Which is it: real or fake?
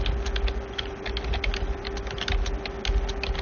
real